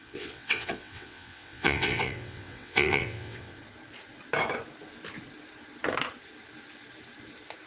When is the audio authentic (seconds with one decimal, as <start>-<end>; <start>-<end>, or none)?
3.6-7.7